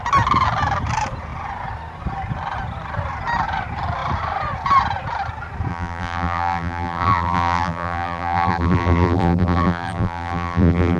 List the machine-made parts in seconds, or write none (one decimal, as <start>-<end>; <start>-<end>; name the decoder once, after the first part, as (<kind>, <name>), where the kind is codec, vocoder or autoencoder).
5.7-11.0 (vocoder, BigVGAN v2)

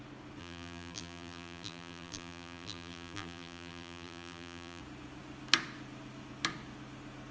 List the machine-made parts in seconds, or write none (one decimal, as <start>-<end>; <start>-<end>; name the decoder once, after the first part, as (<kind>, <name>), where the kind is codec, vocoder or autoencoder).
0.4-4.8 (vocoder, BigVGAN v2)